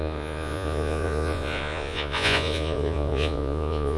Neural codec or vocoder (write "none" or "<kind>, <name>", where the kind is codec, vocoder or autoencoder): vocoder, Vocos